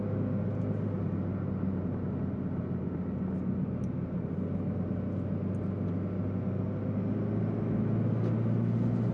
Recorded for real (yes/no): yes